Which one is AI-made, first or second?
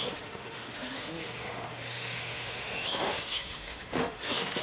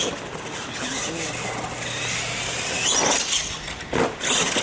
first